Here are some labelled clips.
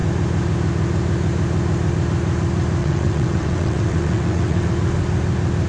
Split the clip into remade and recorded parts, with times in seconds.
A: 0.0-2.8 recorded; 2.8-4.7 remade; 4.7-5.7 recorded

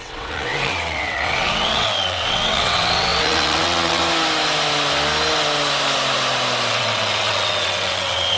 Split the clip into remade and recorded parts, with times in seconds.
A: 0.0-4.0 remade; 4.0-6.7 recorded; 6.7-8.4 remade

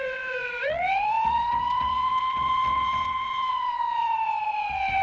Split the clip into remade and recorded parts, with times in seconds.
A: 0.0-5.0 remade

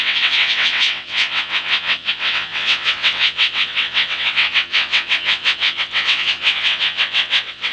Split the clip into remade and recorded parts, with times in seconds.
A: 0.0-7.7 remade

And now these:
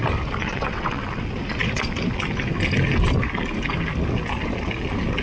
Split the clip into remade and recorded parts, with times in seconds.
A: 0.0-0.4 recorded; 0.4-1.0 remade; 1.0-5.2 recorded

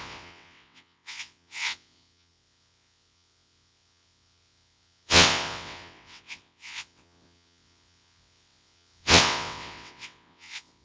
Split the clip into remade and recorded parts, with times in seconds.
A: 0.0-10.8 remade

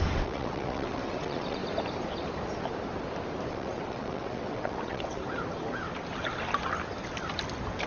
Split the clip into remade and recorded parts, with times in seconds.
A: 0.0-1.6 remade; 1.6-3.5 recorded; 3.5-5.2 remade; 5.2-7.9 recorded